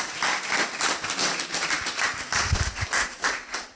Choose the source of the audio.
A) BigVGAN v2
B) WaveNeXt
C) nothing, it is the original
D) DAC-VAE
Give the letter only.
C